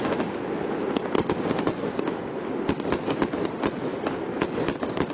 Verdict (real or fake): real